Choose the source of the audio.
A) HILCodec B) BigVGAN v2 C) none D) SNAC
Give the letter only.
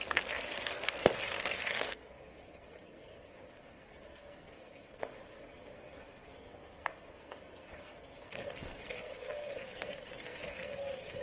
D